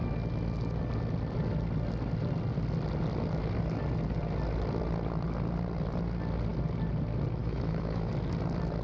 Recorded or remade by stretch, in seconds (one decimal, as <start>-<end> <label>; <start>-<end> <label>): 0.0-7.4 recorded; 7.4-8.1 remade; 8.1-8.8 recorded